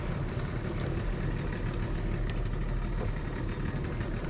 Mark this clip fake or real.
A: real